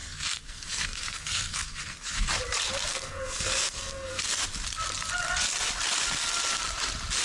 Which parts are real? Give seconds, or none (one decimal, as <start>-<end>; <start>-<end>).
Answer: 2.3-2.9; 4.4-7.2